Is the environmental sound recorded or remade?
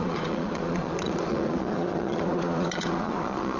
remade